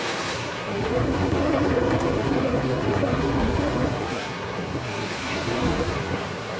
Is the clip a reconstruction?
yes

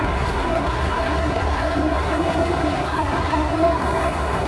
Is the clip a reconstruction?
yes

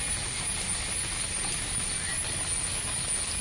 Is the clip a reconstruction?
no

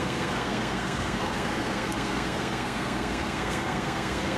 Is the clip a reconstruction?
yes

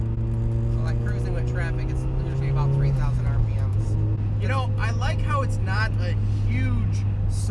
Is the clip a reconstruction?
no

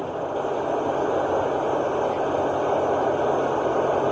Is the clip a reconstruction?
no